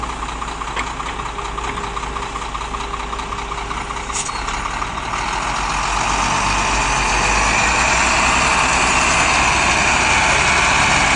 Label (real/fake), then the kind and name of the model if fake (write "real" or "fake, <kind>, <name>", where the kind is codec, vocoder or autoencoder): real